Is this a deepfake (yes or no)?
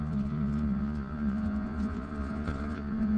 yes